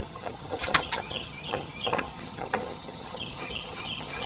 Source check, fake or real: fake